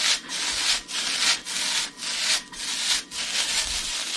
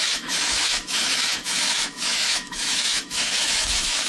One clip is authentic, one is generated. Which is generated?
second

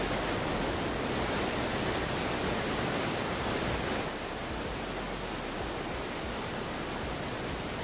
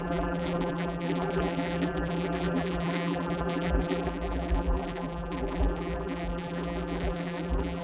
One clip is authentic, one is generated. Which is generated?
second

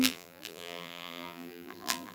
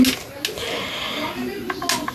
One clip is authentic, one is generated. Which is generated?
first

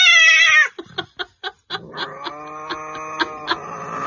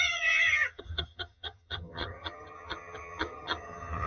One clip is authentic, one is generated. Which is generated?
second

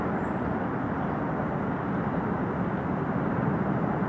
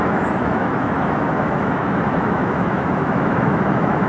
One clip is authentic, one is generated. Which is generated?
second